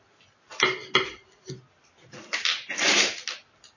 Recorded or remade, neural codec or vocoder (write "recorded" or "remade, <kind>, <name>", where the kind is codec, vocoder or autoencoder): recorded